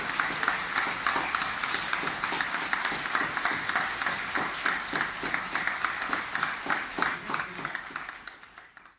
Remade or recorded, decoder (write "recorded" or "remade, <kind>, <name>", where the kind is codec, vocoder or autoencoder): recorded